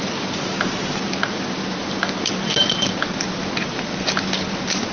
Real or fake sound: real